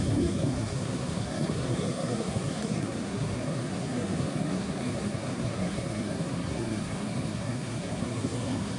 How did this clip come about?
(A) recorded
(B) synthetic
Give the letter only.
B